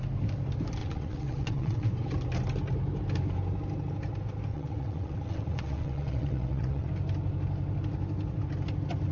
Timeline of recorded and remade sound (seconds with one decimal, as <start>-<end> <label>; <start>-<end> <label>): 0.0-0.8 recorded; 0.8-1.9 remade; 1.9-4.5 recorded; 4.5-6.9 remade; 6.9-9.1 recorded